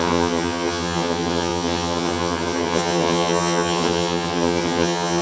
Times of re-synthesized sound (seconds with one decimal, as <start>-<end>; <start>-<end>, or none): 0.0-5.2

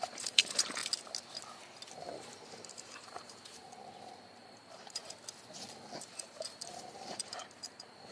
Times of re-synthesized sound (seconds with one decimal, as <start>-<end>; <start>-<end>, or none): 0.0-0.8; 2.0-3.6; 4.4-5.0; 6.0-8.1

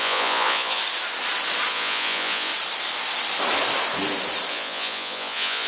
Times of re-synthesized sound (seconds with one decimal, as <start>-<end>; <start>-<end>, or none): 0.0-0.8; 1.7-2.5; 4.5-5.7